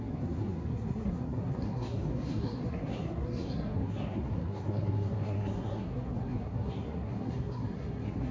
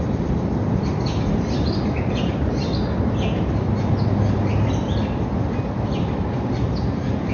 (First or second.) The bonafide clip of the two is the second